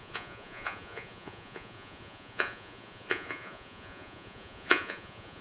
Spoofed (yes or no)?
yes